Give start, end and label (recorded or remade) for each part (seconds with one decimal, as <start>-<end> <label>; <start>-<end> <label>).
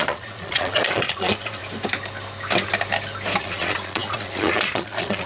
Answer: 0.0-1.6 remade; 1.6-3.4 recorded; 3.4-5.3 remade